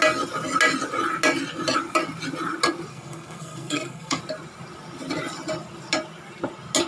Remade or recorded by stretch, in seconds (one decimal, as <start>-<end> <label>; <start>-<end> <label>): 0.0-2.9 recorded; 2.9-4.2 remade; 4.2-6.9 recorded

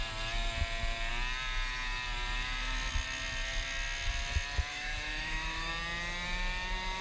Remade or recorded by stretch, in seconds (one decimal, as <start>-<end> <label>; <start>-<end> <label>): 0.0-4.7 recorded; 4.7-5.7 remade; 5.7-7.0 recorded